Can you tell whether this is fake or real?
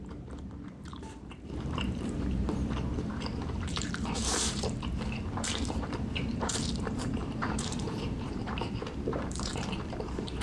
fake